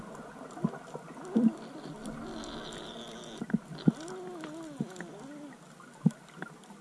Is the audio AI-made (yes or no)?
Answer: no